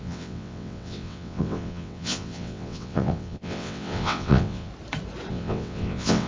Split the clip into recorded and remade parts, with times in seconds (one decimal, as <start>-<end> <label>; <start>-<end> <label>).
0.0-4.7 remade; 4.7-5.3 recorded; 5.3-6.3 remade